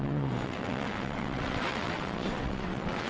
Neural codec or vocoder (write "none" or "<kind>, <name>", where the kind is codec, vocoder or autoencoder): vocoder, WaveNeXt